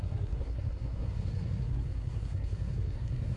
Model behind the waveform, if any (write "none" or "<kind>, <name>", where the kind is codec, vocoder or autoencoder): codec, SNAC